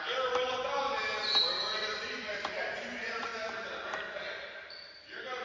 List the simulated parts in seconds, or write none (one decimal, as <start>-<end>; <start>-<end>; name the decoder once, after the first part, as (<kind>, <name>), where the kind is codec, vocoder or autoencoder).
0.0-3.3 (vocoder, BigVGAN v2); 4.5-5.4